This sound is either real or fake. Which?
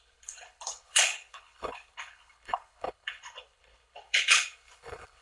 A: fake